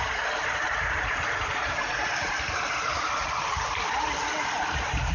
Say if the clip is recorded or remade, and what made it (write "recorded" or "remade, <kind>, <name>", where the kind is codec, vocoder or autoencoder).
recorded